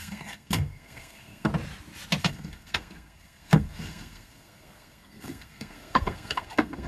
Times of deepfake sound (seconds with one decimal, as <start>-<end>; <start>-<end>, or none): 0.0-1.5; 2.2-6.9